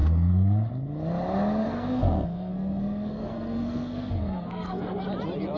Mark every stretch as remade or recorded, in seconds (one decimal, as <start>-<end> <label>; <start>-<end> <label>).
0.0-0.7 remade; 0.7-1.6 recorded; 1.6-5.0 remade; 5.0-5.6 recorded